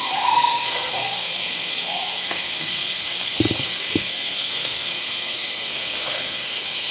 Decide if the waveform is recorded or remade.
remade